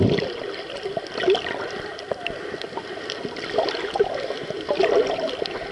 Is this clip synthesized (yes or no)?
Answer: no